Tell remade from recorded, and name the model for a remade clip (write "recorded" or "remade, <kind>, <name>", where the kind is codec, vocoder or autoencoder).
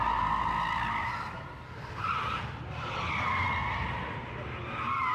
recorded